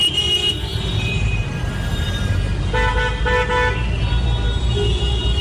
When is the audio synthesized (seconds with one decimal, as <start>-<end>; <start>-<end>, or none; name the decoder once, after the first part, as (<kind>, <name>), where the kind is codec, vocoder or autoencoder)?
none